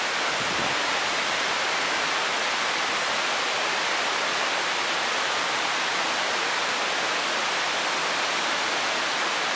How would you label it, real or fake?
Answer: real